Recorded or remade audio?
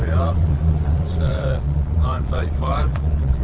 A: remade